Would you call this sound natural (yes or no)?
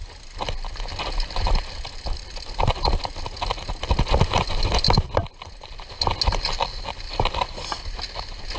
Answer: yes